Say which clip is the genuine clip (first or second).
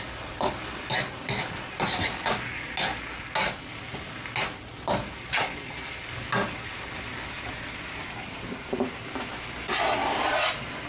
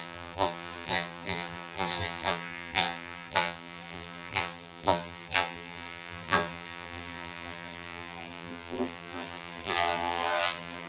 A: first